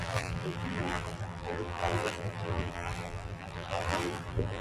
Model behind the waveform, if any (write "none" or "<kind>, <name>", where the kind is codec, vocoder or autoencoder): vocoder, BigVGAN v2